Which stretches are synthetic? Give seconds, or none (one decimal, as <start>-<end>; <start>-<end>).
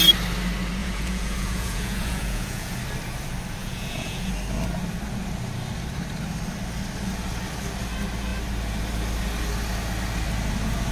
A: 0.8-2.8; 3.6-4.3